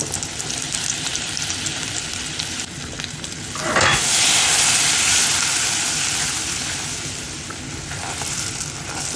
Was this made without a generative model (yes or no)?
no